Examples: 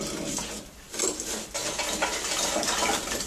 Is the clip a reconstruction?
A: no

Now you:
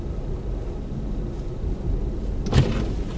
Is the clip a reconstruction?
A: no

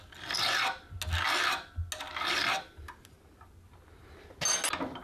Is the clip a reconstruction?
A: no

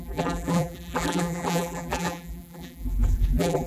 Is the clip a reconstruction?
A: yes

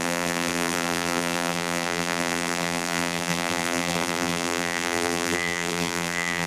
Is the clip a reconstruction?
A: yes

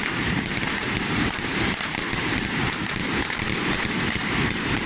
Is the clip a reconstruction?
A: yes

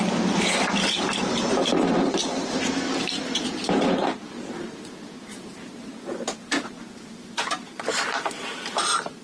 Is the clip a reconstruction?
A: yes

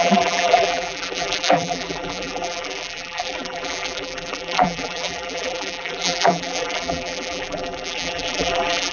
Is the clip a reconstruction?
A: yes